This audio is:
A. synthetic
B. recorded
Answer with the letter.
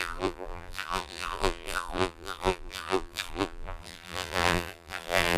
A